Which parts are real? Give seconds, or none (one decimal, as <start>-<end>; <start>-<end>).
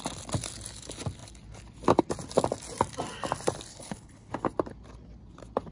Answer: 0.0-3.7; 4.3-5.7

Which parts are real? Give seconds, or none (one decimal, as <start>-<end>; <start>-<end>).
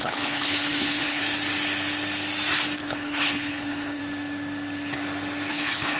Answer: 1.2-2.8; 4.0-5.5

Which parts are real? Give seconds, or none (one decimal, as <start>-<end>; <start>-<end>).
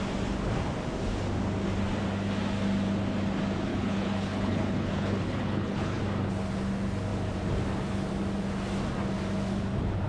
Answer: 0.0-3.7; 6.0-10.1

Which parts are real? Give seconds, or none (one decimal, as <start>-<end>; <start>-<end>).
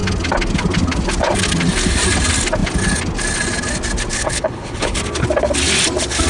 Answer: 0.0-4.1; 5.0-6.3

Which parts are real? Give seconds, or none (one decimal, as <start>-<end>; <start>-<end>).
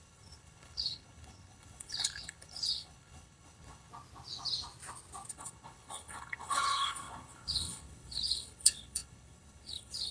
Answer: 3.9-5.3